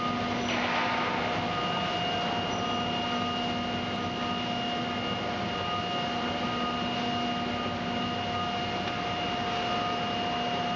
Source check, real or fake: real